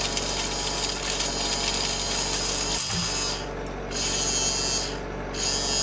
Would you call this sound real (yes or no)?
yes